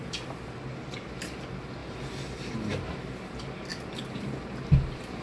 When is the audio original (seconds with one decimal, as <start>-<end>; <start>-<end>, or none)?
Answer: 0.0-5.2